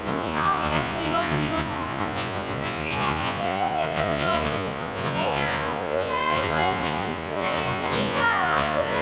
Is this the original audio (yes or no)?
no